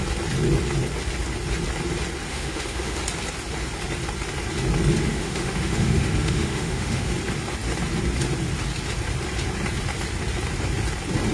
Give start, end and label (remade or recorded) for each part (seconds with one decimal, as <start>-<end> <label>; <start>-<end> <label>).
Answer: 0.0-2.3 recorded; 2.3-3.0 remade; 3.0-5.1 recorded; 5.1-7.1 remade; 7.1-11.3 recorded